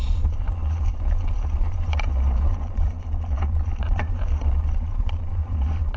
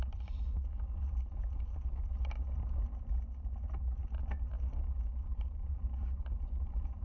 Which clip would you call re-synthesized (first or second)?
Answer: first